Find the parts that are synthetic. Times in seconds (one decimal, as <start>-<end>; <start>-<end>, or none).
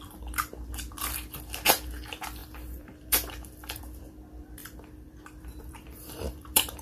0.0-6.8